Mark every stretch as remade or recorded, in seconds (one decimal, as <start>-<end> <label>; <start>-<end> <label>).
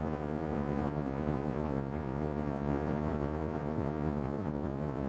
0.0-5.1 remade